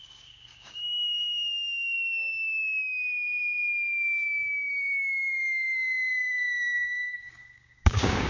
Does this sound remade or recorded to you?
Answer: remade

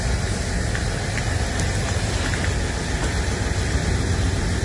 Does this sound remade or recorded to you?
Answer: recorded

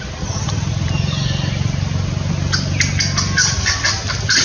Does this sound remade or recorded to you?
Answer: recorded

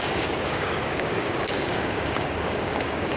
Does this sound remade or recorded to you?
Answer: remade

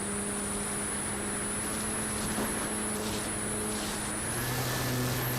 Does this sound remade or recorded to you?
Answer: recorded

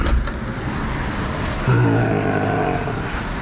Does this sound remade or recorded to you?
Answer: recorded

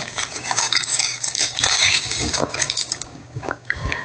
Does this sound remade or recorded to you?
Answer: remade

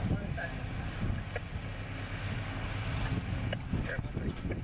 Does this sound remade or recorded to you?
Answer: recorded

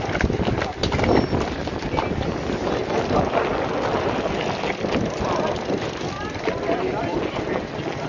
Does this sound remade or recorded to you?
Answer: recorded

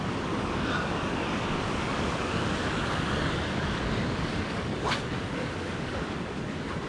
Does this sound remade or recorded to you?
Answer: remade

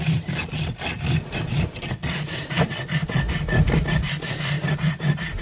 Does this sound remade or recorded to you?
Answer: recorded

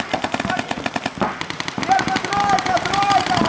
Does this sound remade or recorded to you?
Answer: recorded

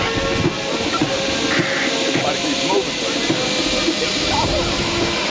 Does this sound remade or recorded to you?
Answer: recorded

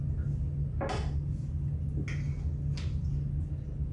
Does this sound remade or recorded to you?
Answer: recorded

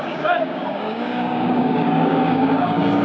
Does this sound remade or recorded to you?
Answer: remade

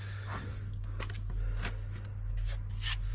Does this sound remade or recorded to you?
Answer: recorded